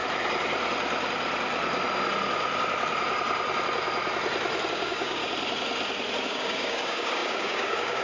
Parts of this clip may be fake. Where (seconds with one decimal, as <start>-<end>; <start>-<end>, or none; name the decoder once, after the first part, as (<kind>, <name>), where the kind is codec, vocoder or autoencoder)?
4.7-5.2 (codec, DAC); 6.2-8.0